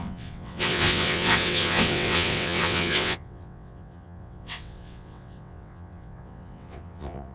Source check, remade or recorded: remade